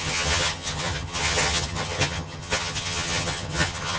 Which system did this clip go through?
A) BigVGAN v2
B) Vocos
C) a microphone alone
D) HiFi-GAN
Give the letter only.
D